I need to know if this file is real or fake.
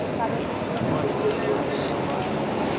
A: real